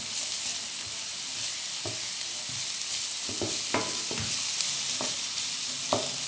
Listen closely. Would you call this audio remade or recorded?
recorded